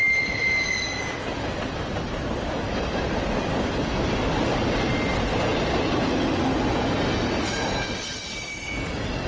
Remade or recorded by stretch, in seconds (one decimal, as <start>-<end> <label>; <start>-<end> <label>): 0.0-9.3 recorded